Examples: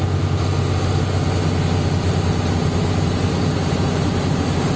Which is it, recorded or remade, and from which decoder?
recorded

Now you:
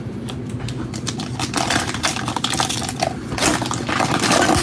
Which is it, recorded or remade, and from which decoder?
recorded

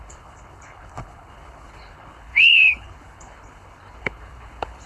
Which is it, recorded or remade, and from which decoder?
remade, codec, HILCodec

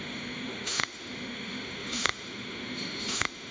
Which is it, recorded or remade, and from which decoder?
remade, autoencoder, DAC-VAE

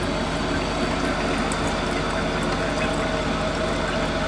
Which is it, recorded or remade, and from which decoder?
recorded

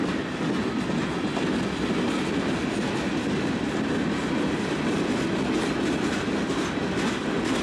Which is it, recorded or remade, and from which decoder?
recorded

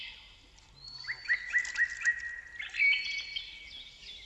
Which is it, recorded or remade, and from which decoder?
recorded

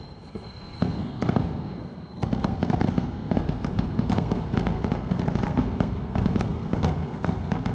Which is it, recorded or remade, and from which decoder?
remade, codec, SNAC